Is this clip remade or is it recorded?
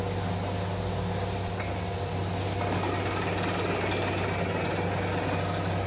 recorded